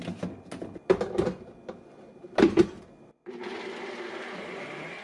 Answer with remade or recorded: recorded